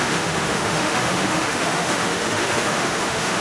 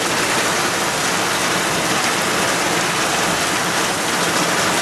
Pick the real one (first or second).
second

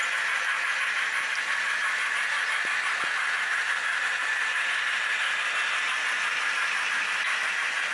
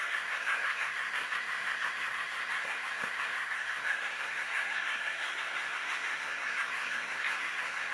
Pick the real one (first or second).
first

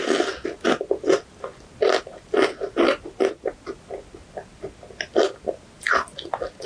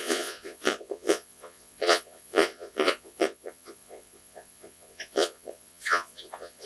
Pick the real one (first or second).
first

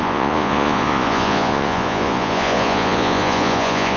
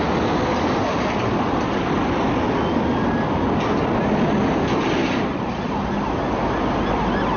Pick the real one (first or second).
second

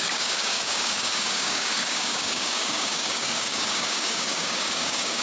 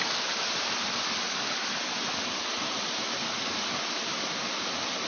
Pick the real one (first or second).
second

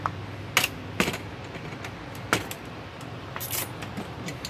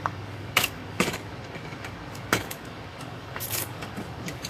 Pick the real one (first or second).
first